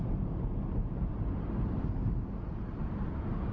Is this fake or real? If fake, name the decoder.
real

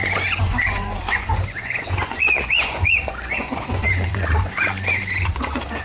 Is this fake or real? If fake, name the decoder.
fake, vocoder, Vocos